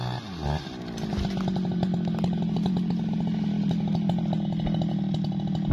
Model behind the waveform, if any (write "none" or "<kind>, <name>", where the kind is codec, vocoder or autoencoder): none